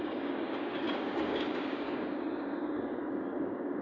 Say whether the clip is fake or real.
fake